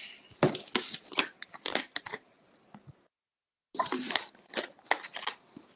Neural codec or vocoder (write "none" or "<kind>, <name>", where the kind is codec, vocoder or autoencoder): none